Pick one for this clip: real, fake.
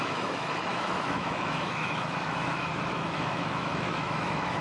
fake